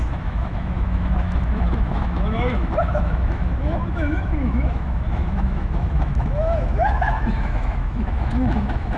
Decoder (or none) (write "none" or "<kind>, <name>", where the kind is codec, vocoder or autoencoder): autoencoder, DAC-VAE